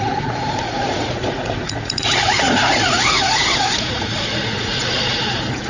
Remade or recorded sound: remade